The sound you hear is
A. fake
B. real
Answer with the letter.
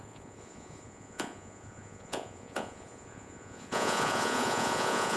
A